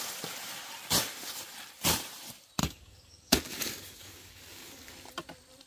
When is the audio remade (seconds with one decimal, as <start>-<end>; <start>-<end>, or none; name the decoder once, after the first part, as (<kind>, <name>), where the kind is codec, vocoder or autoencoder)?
2.6-4.9 (codec, DAC)